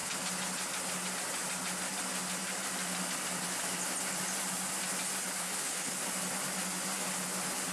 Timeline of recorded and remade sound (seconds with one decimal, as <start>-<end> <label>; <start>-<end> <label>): 0.0-5.4 recorded; 5.4-5.9 remade; 5.9-7.7 recorded